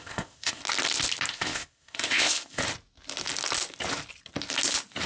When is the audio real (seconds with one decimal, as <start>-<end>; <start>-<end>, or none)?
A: 0.6-1.3; 2.6-5.1